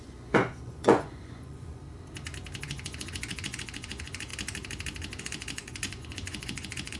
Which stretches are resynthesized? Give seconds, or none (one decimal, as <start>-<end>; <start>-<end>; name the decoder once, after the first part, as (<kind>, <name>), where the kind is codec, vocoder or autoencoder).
0.0-1.8 (vocoder, Vocos); 2.6-4.3; 5.2-7.0